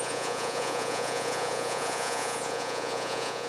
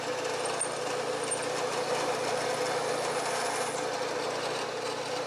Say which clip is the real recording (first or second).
second